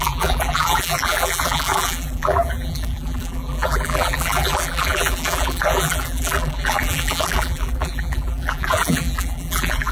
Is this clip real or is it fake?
fake